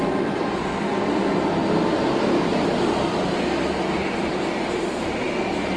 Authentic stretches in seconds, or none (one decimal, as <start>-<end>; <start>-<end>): 0.0-5.8